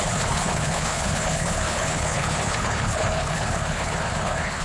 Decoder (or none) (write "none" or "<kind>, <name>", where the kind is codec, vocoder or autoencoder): codec, HILCodec